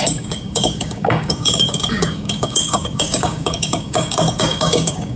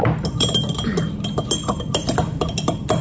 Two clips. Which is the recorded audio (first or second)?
second